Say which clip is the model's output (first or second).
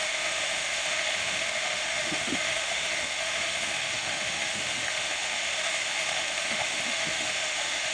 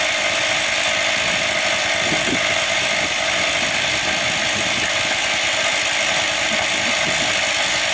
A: first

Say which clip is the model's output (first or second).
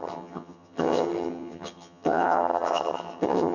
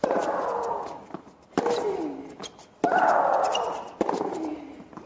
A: first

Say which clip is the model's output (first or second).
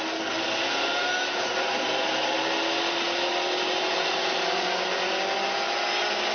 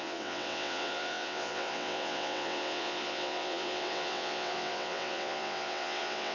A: second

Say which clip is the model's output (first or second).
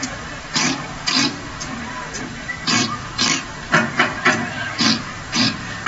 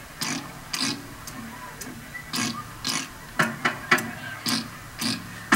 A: first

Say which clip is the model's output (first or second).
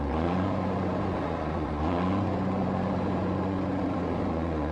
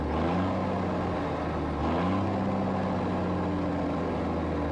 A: first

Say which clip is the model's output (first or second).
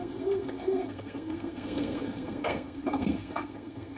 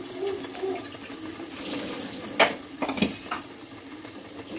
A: first